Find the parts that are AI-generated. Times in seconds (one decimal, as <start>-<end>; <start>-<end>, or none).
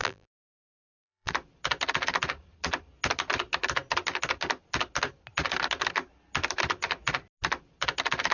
0.0-1.3